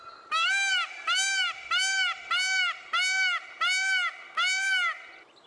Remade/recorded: recorded